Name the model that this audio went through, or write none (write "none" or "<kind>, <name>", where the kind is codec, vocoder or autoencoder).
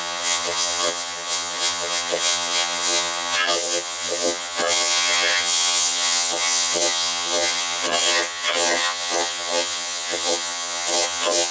vocoder, HiFi-GAN